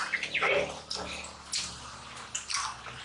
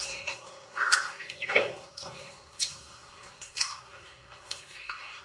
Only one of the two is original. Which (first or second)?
first